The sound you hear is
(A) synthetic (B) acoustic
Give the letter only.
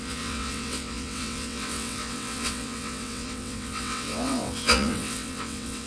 A